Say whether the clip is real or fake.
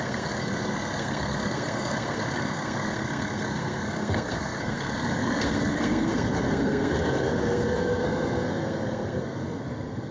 fake